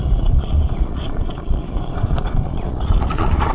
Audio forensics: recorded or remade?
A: remade